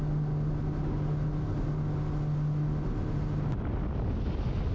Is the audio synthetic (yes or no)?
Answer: no